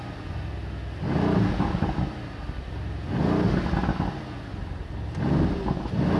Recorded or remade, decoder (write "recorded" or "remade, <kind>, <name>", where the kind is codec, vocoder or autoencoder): recorded